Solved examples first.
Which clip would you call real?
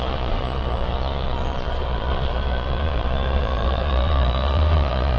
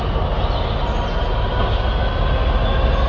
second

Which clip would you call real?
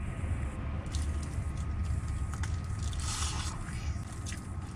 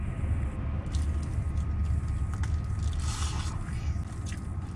second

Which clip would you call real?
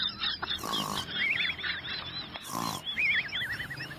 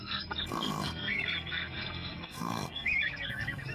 first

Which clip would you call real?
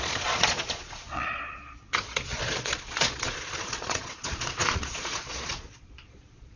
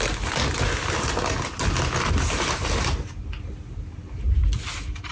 second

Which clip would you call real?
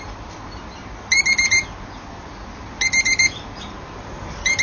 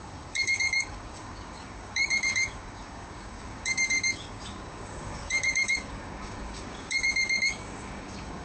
first